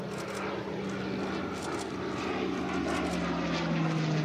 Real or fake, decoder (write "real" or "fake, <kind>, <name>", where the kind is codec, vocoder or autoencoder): real